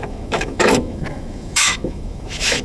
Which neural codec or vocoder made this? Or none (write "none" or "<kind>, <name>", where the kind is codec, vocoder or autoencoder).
autoencoder, DAC-VAE